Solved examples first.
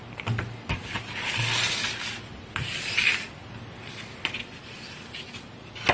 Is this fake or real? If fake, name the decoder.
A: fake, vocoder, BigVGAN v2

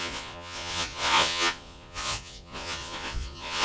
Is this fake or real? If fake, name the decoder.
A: fake, vocoder, Vocos